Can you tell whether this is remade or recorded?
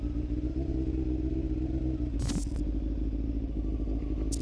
recorded